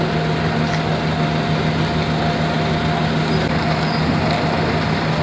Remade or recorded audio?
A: recorded